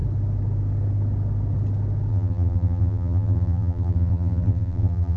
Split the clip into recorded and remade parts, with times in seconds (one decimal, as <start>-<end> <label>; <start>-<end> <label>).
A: 0.0-2.1 recorded; 2.1-5.2 remade